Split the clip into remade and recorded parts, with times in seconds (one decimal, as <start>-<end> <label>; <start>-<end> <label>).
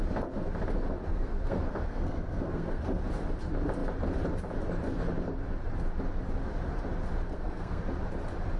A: 0.0-1.1 recorded; 1.1-3.0 remade; 3.0-7.3 recorded; 7.3-7.8 remade; 7.8-8.6 recorded